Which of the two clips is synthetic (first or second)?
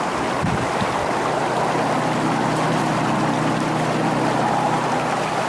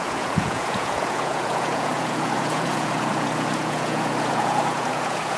second